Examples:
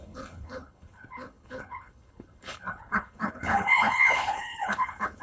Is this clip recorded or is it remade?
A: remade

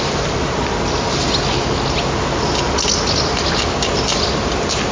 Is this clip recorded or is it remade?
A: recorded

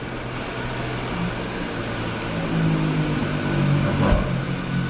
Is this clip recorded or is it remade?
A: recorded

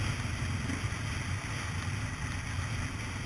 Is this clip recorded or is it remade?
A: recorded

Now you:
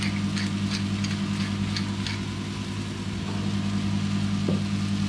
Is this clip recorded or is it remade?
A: recorded